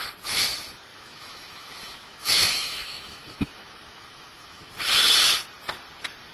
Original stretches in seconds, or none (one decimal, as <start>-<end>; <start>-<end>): 0.0-0.9; 4.7-6.3